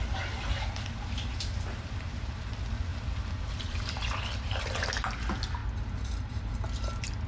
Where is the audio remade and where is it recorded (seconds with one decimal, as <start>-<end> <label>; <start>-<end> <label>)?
0.0-0.5 recorded; 0.5-2.5 remade; 2.5-2.9 recorded; 2.9-4.9 remade; 4.9-5.6 recorded; 5.6-6.5 remade; 6.5-7.3 recorded